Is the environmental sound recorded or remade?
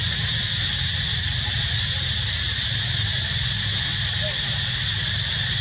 remade